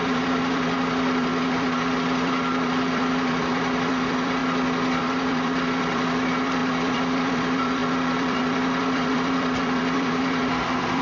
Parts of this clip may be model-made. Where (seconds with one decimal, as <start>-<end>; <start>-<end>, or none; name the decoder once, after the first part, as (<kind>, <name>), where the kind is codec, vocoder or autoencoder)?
0.0-4.4 (vocoder, BigVGAN v2); 5.0-11.0